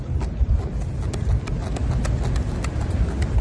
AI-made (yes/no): no